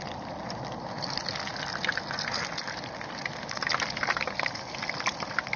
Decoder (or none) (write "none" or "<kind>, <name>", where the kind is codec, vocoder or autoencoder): none